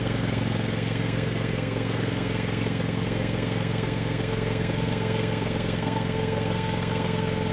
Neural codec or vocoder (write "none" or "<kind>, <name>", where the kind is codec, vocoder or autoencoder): codec, SNAC